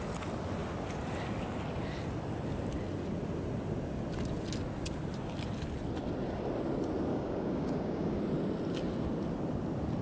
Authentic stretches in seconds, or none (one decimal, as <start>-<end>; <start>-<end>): 0.0-7.1; 8.2-10.0